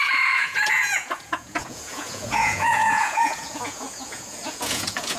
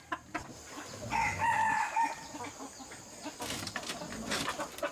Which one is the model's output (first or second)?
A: first